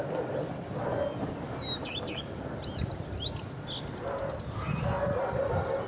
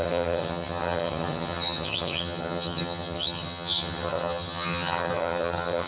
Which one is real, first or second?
first